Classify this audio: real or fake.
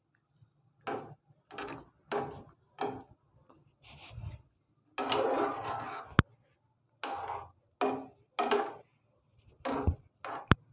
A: real